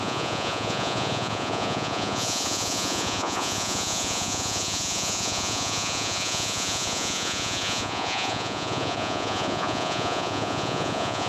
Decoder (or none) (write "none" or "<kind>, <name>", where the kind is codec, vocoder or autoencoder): vocoder, Vocos